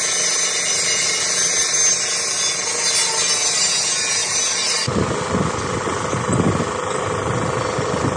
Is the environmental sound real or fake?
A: real